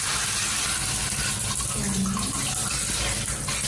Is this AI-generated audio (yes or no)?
no